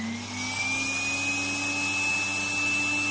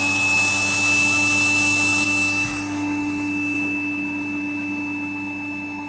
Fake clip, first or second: second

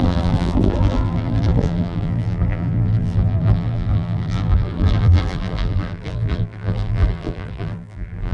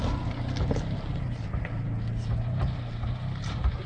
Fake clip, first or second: first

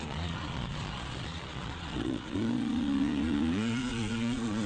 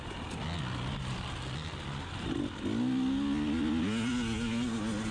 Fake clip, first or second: first